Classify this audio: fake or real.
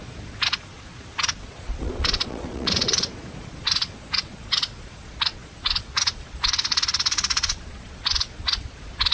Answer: fake